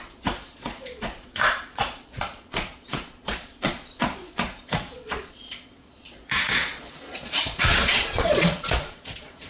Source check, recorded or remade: remade